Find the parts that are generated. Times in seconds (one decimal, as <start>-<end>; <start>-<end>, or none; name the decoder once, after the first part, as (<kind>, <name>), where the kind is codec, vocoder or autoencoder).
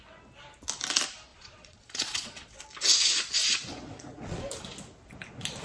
1.3-2.6 (vocoder, Vocos); 3.7-4.5